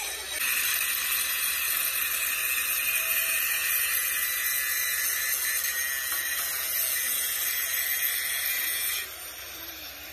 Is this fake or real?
real